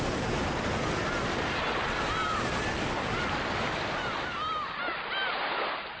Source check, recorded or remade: recorded